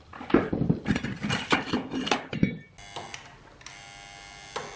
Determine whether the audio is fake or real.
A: real